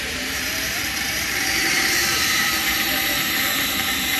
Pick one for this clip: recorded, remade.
remade